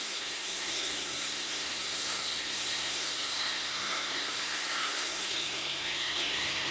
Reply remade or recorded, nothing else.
remade